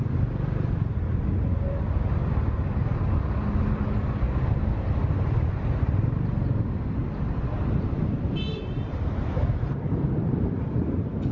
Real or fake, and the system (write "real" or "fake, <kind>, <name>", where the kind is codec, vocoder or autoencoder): real